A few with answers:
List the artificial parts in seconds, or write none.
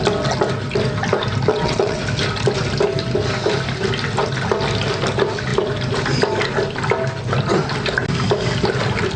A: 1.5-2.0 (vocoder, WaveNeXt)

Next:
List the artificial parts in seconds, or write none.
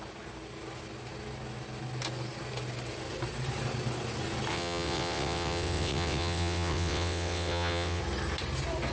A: 4.5-8.0 (vocoder, WaveNeXt)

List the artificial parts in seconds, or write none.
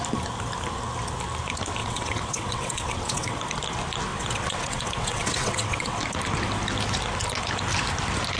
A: 1.8-3.4 (vocoder, WaveNeXt); 4.1-6.0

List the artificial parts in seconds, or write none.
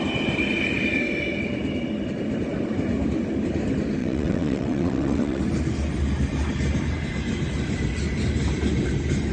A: 4.0-5.4 (vocoder, WaveNeXt)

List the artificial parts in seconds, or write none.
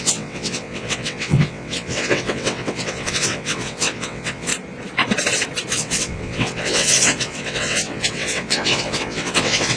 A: 0.0-4.5 (vocoder, WaveNeXt); 5.7-9.8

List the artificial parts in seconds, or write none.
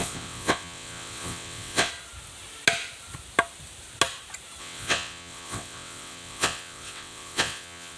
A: 0.0-1.9 (vocoder, WaveNeXt); 4.6-8.0